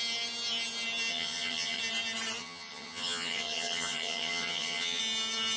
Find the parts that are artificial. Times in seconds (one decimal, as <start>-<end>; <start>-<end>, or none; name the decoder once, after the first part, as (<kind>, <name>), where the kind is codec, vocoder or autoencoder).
1.1-1.8 (vocoder, HiFi-GAN); 2.4-5.0